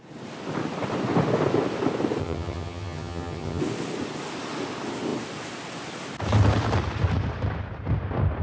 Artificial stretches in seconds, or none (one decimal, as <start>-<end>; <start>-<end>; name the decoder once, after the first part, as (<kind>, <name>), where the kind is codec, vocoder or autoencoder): 2.2-3.6 (vocoder, HiFi-GAN)